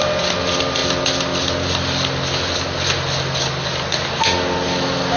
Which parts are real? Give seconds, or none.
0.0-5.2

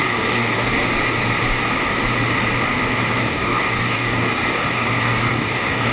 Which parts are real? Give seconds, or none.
0.8-3.2